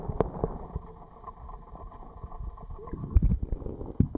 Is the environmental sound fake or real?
real